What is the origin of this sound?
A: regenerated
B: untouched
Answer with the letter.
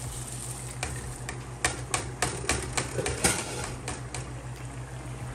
B